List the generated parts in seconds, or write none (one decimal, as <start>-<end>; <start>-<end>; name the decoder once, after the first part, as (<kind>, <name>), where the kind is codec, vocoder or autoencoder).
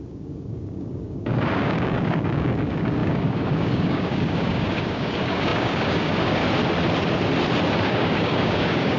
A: 0.0-6.4 (codec, DAC); 7.8-9.0